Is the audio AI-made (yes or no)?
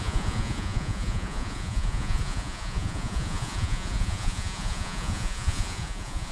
yes